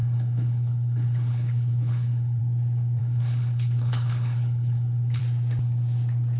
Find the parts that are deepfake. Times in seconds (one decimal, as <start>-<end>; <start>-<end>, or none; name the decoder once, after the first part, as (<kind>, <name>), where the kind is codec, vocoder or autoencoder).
0.0-2.4 (codec, HILCodec); 3.0-5.2